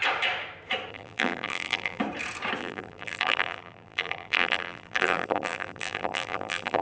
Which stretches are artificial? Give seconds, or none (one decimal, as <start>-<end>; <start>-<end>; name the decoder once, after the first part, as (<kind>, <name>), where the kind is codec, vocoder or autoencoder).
0.9-2.0 (vocoder, BigVGAN v2); 2.6-6.8